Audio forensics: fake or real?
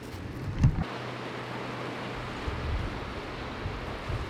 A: real